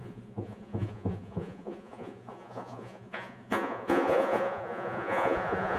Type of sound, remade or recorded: remade